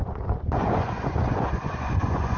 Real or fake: fake